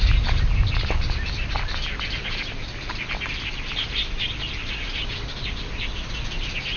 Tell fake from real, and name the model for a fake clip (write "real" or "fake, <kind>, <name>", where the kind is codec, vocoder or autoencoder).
real